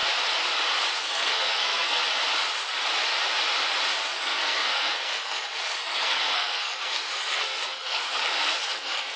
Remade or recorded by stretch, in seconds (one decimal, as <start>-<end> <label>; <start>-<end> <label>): 0.0-1.0 recorded; 1.0-2.0 remade; 2.0-4.1 recorded; 4.1-9.2 remade